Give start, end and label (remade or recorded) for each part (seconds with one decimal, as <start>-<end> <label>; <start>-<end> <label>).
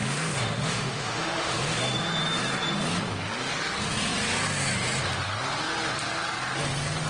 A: 0.0-1.8 remade; 1.8-7.1 recorded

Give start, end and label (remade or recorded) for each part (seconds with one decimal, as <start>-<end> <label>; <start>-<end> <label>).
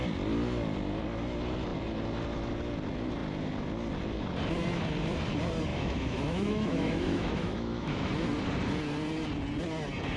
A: 0.0-5.7 recorded; 5.7-8.1 remade; 8.1-10.2 recorded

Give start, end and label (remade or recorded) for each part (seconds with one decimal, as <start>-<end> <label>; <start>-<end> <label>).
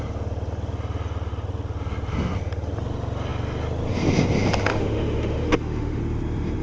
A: 0.0-4.7 recorded; 4.7-6.0 remade; 6.0-6.6 recorded